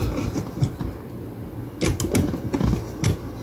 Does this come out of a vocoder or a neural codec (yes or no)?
no